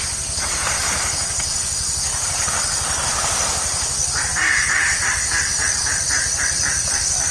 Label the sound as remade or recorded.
recorded